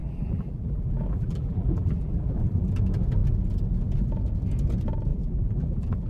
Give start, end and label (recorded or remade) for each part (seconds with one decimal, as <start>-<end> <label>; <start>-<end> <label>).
0.0-2.7 remade; 2.7-5.1 recorded; 5.1-6.1 remade